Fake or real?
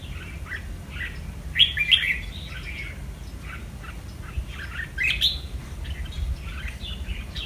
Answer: real